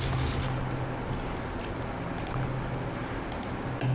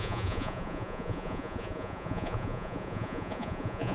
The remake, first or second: second